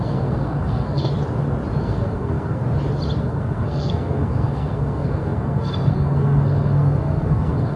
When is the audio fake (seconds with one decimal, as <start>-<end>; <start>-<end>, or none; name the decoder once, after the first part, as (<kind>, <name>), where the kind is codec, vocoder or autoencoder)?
0.0-1.1 (codec, SNAC); 1.8-2.6; 3.2-7.8